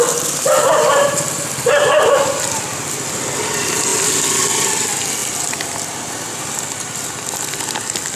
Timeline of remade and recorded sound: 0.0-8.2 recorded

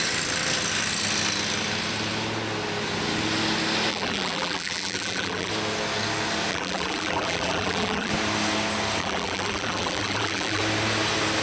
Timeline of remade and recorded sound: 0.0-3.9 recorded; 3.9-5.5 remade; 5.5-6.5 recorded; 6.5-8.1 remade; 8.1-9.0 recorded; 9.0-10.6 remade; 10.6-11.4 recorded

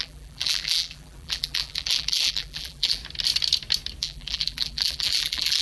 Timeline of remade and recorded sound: 0.0-3.0 remade; 3.0-4.0 recorded; 4.0-5.6 remade